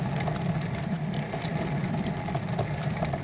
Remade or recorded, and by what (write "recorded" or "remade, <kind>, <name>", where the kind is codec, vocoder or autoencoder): recorded